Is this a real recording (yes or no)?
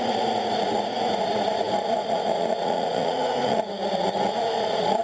no